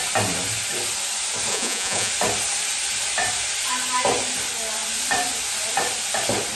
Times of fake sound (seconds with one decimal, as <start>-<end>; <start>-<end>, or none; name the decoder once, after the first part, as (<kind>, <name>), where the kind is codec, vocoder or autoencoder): 1.5-2.1 (vocoder, Vocos)